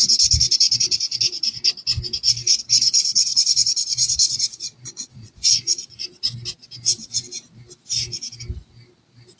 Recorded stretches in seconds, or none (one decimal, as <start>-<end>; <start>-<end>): 0.0-2.9; 6.0-9.4